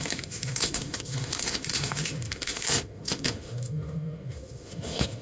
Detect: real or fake fake